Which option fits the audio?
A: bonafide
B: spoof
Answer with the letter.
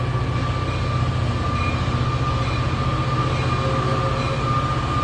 A